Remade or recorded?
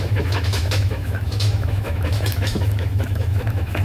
remade